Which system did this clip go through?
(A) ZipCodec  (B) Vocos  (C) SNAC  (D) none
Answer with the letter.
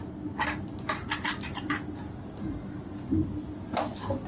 D